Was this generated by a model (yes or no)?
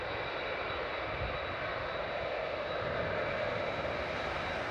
no